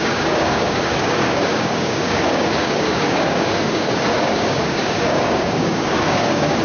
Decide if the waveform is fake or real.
fake